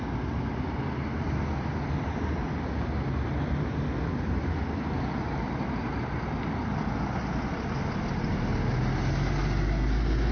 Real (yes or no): yes